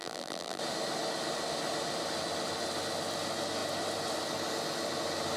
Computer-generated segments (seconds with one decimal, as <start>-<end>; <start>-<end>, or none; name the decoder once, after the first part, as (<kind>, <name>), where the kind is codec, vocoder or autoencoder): 0.0-0.6 (vocoder, BigVGAN v2)